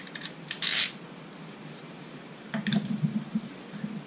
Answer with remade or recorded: recorded